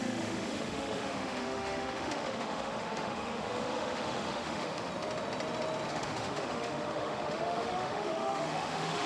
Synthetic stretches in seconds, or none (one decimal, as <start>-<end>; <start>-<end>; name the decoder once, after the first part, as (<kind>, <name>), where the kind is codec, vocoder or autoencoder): 0.0-4.9 (autoencoder, DAC-VAE); 5.9-9.1